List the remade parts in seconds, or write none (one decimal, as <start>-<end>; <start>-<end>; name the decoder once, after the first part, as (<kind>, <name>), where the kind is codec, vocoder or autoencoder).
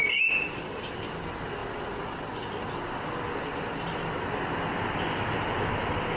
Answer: none